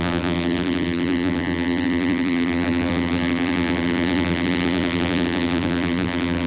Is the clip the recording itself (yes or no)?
no